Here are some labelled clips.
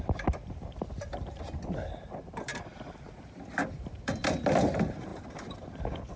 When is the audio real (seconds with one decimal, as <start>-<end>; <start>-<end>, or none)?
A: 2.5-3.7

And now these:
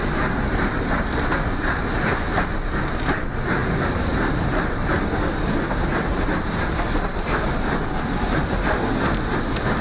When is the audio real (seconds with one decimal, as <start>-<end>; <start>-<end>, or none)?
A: 1.3-3.6; 4.9-9.8

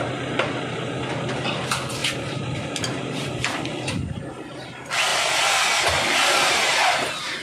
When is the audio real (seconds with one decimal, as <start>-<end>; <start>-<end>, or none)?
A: 0.0-2.0; 4.2-5.1; 6.7-7.4